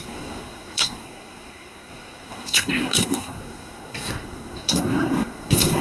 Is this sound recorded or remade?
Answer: remade